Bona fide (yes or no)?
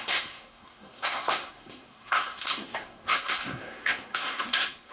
no